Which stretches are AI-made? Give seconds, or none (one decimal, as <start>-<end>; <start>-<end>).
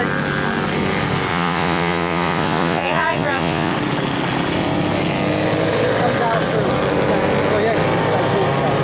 1.3-3.7